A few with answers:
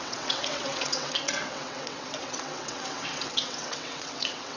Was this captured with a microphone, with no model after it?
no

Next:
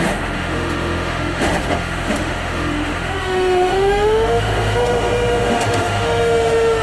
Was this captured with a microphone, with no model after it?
no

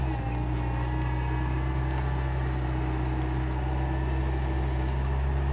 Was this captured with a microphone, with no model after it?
yes